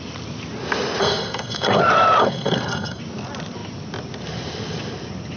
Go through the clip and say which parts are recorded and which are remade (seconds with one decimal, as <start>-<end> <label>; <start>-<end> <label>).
0.0-1.0 recorded; 1.0-1.8 remade; 1.8-2.2 recorded; 2.2-3.0 remade; 3.0-5.4 recorded